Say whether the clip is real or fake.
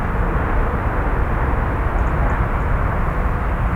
real